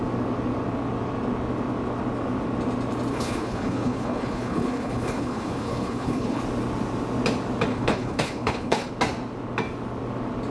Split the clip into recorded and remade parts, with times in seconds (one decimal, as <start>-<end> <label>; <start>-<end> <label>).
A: 0.0-3.1 recorded; 3.1-6.4 remade; 6.4-7.7 recorded; 7.7-8.9 remade; 8.9-10.5 recorded